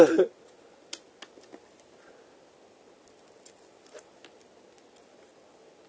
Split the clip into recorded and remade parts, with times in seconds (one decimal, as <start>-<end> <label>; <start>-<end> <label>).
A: 0.0-5.9 recorded